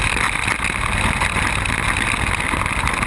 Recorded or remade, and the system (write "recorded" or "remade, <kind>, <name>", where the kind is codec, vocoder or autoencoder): recorded